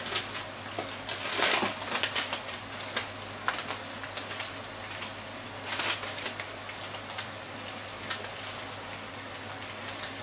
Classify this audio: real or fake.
real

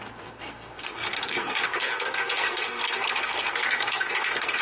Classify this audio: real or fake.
fake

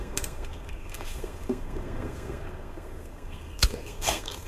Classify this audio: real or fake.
fake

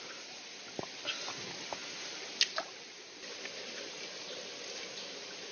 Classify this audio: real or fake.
real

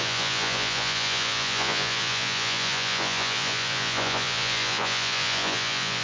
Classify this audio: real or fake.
fake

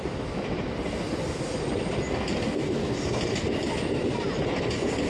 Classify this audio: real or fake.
real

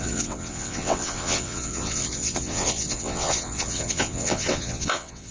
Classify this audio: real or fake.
fake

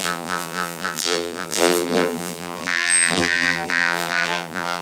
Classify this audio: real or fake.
fake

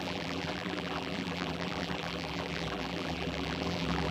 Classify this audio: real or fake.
fake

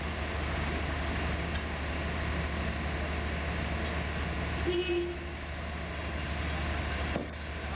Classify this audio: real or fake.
real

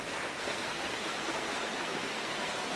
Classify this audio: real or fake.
fake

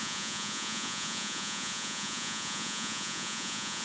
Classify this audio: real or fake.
fake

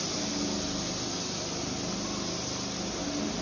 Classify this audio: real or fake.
real